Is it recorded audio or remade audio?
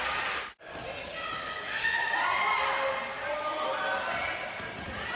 recorded